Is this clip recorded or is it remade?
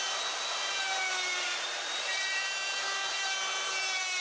remade